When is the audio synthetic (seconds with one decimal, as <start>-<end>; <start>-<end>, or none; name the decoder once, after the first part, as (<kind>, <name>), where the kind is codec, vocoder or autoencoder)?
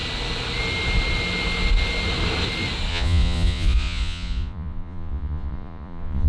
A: 2.9-6.3 (vocoder, Vocos)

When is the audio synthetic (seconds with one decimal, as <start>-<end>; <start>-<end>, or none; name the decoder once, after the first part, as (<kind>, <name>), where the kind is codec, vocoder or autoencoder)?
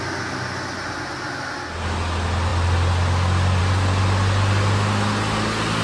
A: none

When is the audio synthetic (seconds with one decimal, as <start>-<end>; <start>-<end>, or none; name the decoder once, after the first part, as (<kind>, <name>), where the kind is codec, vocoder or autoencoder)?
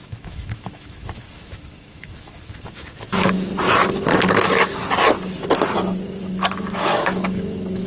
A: 0.0-3.5 (autoencoder, DAC-VAE); 4.3-4.8; 6.2-7.9